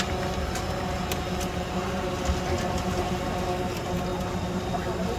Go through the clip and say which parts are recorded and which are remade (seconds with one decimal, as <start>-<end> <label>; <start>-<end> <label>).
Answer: 0.0-5.2 recorded